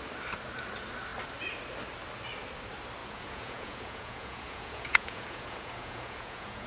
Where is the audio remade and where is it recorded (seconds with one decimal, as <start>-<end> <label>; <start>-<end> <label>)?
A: 0.0-3.0 recorded; 3.0-6.7 remade